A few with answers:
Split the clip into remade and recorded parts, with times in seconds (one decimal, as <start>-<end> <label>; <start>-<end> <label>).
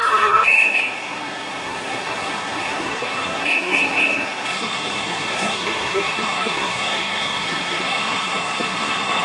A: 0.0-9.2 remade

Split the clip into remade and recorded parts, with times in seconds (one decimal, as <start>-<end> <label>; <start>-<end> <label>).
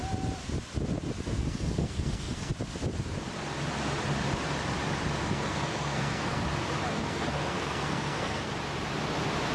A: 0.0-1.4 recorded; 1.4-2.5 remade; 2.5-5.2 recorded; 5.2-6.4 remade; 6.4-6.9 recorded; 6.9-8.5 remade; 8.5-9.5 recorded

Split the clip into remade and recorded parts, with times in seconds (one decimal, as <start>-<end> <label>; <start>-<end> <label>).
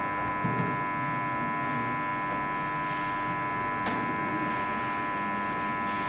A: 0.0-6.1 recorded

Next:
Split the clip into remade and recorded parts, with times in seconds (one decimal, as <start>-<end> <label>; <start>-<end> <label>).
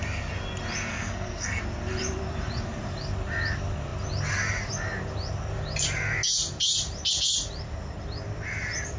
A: 0.0-0.9 recorded; 0.9-1.6 remade; 1.6-9.0 recorded